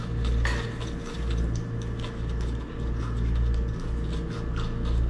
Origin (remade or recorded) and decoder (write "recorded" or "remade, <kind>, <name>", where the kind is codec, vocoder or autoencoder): recorded